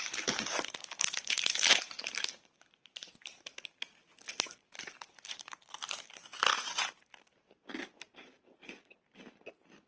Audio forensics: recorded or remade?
recorded